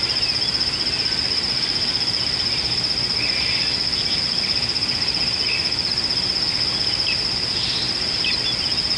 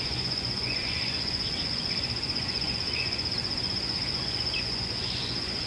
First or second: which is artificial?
second